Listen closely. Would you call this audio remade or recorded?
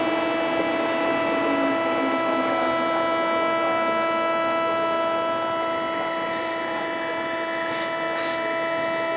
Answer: recorded